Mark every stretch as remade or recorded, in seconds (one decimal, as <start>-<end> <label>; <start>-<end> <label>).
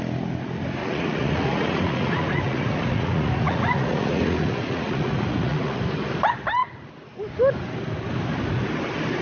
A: 0.0-0.8 recorded; 0.8-5.8 remade; 5.8-9.2 recorded